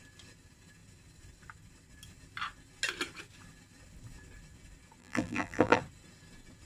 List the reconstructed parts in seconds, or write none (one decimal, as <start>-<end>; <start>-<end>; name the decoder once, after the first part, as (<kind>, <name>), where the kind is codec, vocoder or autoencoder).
5.0-5.8 (vocoder, BigVGAN v2)